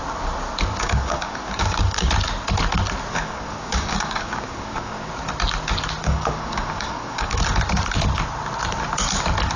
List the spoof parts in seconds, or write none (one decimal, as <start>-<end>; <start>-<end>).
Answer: 0.7-2.1; 3.1-5.1; 6.0-7.4